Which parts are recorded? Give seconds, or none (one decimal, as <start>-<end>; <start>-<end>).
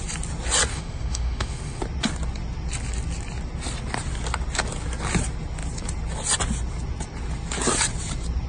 0.0-0.7; 1.8-8.5